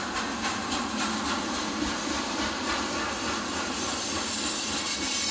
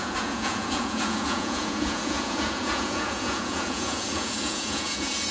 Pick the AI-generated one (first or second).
second